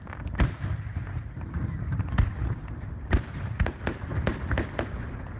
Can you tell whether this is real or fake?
real